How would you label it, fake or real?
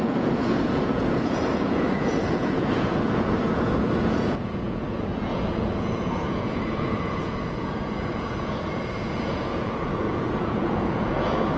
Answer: fake